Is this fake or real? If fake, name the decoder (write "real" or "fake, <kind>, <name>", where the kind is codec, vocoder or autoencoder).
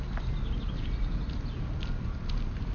real